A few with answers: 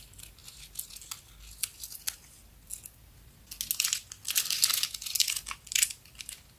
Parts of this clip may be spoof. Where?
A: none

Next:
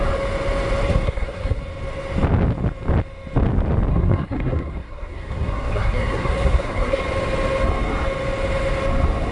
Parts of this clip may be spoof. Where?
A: 0.9-1.6 (codec, SNAC); 3.9-7.0

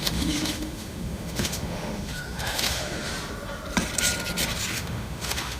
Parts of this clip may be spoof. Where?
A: 0.0-3.1 (autoencoder, DAC-VAE); 4.7-5.6

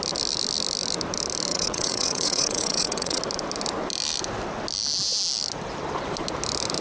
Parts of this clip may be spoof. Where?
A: 1.5-3.2 (vocoder, WaveNeXt)